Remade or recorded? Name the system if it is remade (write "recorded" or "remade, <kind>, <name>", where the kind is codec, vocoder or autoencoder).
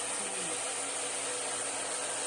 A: remade, vocoder, BigVGAN v2